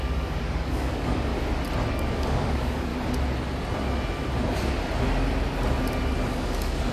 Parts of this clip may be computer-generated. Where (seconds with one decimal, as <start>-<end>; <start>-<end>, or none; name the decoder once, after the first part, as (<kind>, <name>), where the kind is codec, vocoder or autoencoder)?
0.0-1.3 (codec, DAC); 1.9-2.9; 6.3-6.9